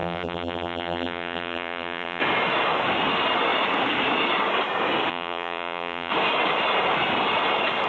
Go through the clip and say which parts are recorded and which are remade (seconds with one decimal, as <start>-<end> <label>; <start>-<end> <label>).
0.0-2.2 remade; 2.2-5.1 recorded; 5.1-6.1 remade; 6.1-7.9 recorded